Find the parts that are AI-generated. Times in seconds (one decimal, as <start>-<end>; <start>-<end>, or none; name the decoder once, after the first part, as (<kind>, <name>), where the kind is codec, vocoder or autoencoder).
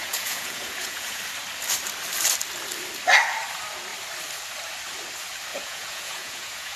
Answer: 0.0-1.2 (vocoder, Vocos); 5.5-6.8